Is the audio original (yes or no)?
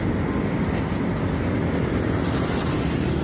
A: yes